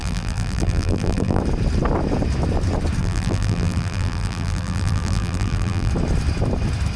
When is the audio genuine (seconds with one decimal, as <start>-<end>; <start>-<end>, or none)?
1.4-3.0; 5.9-7.0